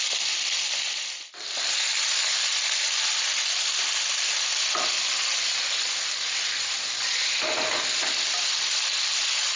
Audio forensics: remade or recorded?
recorded